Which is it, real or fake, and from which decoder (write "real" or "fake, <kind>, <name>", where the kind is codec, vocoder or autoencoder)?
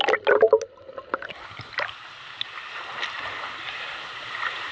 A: real